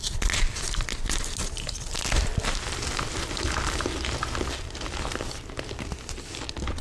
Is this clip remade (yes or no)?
no